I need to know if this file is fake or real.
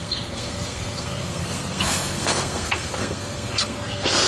fake